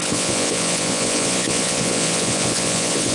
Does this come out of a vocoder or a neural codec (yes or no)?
yes